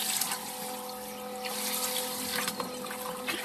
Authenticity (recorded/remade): recorded